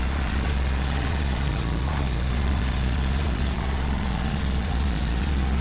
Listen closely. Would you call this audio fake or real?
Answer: fake